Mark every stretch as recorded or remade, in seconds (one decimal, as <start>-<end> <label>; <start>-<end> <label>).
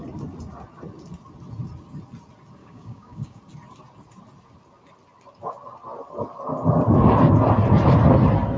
0.0-2.6 recorded; 2.6-3.4 remade; 3.4-8.6 recorded